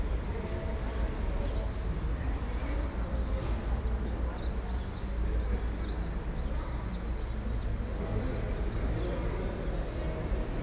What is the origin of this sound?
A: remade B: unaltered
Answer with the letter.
B